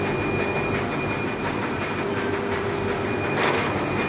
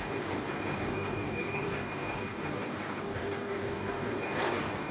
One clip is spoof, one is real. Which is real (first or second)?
first